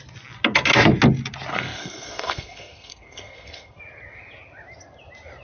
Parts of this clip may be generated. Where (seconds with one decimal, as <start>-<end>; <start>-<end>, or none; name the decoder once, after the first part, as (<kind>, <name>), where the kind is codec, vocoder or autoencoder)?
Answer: 1.5-3.8 (codec, SNAC)